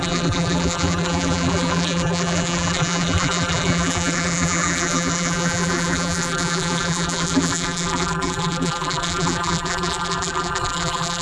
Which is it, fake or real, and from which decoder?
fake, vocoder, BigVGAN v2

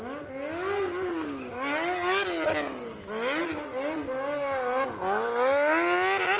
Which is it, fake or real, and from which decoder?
real